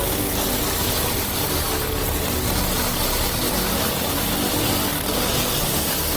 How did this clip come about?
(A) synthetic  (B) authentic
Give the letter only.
B